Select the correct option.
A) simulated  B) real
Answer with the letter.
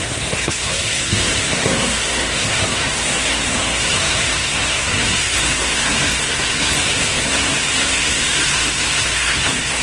A